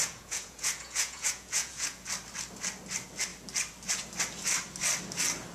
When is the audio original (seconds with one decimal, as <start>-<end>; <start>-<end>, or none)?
2.1-5.5